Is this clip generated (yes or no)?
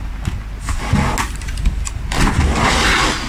no